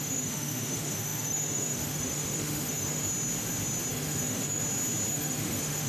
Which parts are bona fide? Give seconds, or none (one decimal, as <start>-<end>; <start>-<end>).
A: 3.1-3.9; 4.6-5.1